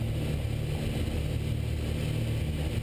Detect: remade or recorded recorded